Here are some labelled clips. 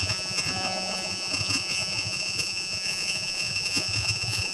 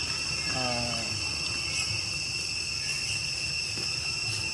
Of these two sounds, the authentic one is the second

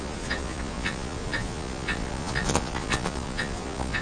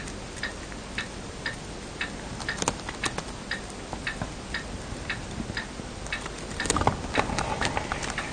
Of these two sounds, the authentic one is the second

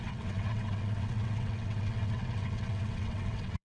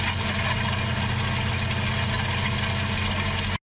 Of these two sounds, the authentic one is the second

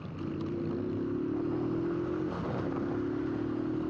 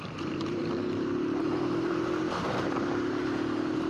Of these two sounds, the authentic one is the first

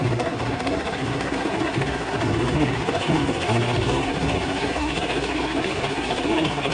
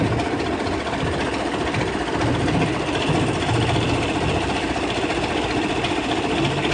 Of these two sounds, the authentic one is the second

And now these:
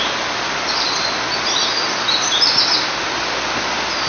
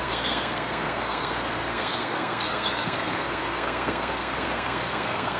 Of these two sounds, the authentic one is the first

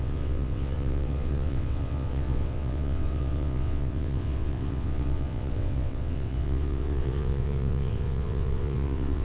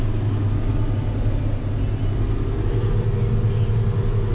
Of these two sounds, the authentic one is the second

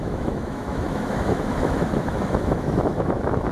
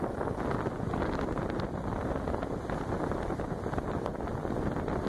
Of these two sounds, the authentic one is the second